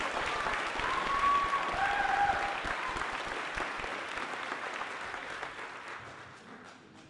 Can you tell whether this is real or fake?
real